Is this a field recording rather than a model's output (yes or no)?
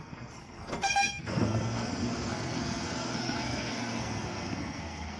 no